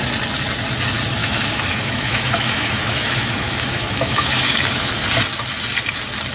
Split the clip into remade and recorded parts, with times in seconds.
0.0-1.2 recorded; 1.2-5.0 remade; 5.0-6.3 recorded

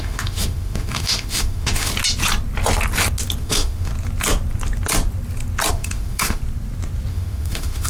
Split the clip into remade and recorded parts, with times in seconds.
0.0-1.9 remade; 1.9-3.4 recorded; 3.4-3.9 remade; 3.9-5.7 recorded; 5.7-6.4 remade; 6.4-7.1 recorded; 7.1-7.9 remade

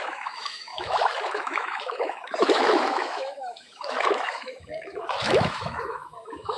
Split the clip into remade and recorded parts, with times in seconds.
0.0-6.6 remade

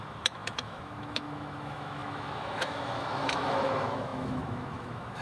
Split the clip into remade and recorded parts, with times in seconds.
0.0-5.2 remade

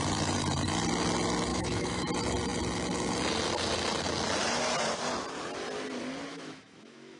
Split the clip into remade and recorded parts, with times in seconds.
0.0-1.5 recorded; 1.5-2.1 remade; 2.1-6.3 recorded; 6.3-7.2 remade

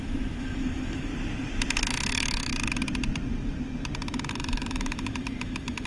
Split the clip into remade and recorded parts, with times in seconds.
0.0-1.1 remade; 1.1-1.8 recorded; 1.8-2.5 remade; 2.5-4.3 recorded; 4.3-5.9 remade

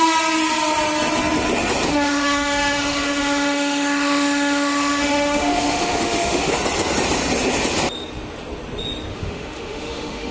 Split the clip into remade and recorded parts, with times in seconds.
0.0-1.9 recorded; 1.9-6.5 remade; 6.5-9.1 recorded; 9.1-10.3 remade

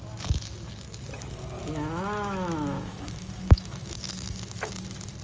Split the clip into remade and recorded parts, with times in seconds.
0.0-1.6 recorded; 1.6-4.7 remade; 4.7-5.2 recorded